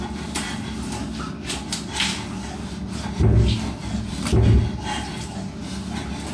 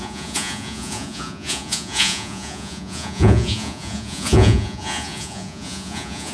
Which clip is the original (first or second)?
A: first